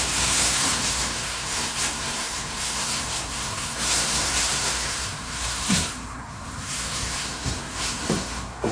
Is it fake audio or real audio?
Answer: fake